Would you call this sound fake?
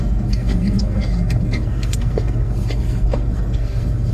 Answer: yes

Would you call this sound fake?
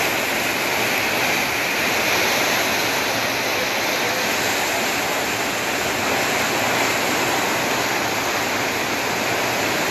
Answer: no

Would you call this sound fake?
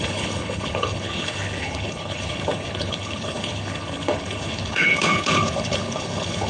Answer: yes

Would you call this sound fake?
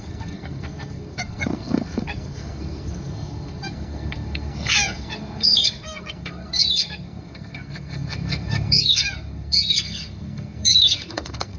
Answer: yes